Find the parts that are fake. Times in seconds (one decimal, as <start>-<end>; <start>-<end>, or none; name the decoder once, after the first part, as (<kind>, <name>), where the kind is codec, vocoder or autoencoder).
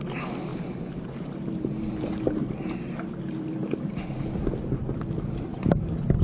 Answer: 0.5-4.2 (vocoder, BigVGAN v2); 5.5-6.2